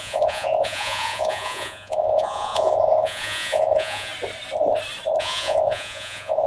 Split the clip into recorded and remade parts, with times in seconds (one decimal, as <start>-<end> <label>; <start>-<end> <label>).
0.0-4.1 remade; 4.1-5.2 recorded; 5.2-6.5 remade